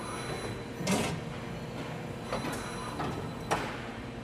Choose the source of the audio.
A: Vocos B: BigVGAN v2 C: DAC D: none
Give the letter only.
D